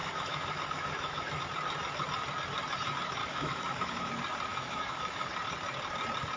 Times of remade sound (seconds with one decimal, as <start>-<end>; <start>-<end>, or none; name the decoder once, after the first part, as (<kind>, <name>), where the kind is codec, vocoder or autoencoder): 0.0-1.4 (autoencoder, DAC-VAE); 3.2-4.1; 4.5-5.3